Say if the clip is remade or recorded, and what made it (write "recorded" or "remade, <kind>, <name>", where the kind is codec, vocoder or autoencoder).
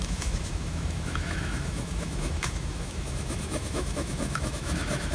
remade, autoencoder, DAC-VAE